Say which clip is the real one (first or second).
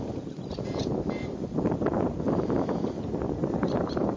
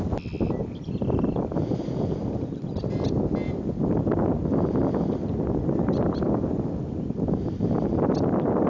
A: second